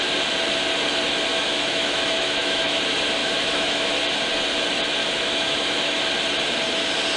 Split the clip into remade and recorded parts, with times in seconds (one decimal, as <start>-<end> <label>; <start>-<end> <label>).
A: 0.0-1.3 recorded; 1.3-2.8 remade; 2.8-3.2 recorded; 3.2-4.0 remade; 4.0-5.0 recorded; 5.0-6.0 remade; 6.0-7.2 recorded